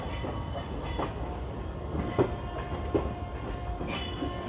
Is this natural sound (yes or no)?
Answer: yes